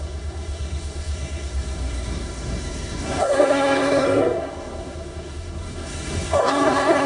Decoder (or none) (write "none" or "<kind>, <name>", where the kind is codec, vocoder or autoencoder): codec, SNAC